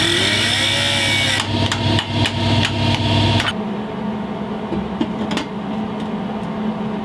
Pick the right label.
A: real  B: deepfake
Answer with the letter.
A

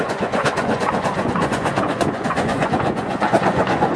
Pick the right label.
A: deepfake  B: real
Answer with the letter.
A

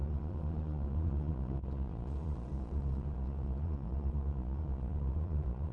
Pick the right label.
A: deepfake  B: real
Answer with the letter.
A